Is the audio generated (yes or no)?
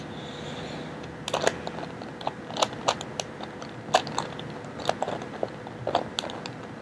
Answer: no